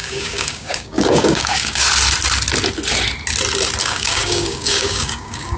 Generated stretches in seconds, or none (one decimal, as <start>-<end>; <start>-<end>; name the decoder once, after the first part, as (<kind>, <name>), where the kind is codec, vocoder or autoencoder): 0.0-1.9 (codec, DAC); 3.8-5.6